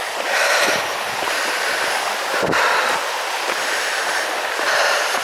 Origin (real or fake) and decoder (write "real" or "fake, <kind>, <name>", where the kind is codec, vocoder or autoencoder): real